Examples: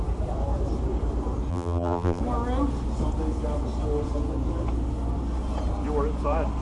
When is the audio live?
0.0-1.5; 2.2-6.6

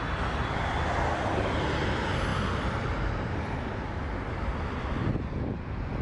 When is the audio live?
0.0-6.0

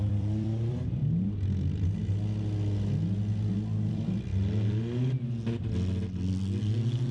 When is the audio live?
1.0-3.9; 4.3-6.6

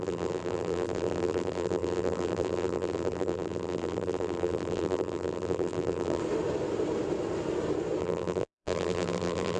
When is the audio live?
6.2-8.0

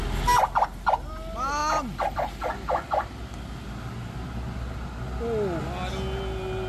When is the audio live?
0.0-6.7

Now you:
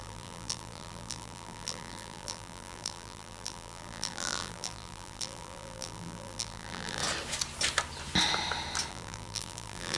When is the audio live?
7.0-8.9

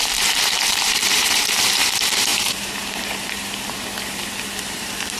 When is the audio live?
2.3-4.6

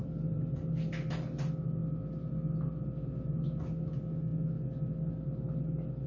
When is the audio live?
0.5-6.1